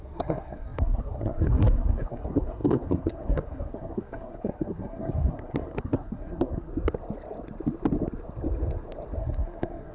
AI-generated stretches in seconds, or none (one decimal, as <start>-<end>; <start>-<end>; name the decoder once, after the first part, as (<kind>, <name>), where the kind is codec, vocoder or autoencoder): 0.0-6.7 (codec, SNAC); 9.2-9.9